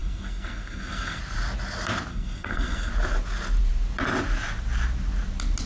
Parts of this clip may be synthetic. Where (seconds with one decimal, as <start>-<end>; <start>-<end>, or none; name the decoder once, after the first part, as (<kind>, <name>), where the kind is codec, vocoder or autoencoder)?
0.0-1.2 (codec, SNAC); 2.1-2.9